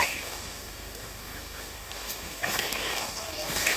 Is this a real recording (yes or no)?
no